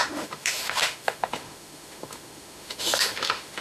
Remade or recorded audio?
remade